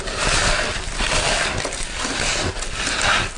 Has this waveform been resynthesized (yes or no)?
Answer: no